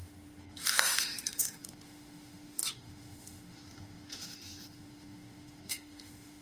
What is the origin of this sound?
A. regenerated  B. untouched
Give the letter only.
A